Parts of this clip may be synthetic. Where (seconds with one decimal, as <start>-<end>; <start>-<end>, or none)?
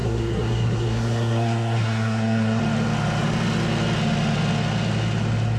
0.0-2.6